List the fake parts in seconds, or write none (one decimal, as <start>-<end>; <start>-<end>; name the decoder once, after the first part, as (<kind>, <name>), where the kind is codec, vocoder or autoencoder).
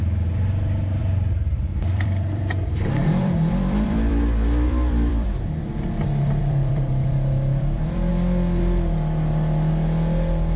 1.0-5.4 (vocoder, BigVGAN v2); 6.4-8.1